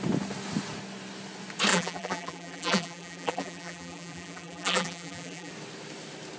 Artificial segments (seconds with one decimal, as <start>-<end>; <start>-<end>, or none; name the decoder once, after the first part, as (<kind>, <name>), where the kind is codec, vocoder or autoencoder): 1.7-5.5 (vocoder, BigVGAN v2)